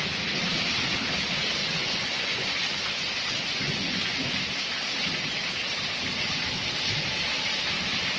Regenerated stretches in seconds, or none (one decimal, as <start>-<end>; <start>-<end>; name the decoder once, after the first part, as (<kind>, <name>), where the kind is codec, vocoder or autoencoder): 1.6-4.3 (vocoder, Vocos)